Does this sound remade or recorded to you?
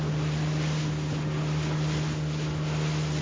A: recorded